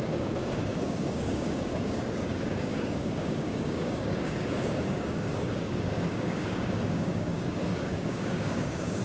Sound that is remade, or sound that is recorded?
remade